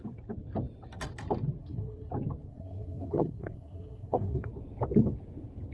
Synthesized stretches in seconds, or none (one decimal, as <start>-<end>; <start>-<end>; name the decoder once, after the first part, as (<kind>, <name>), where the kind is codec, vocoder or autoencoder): 1.6-2.1 (codec, SNAC); 2.5-4.5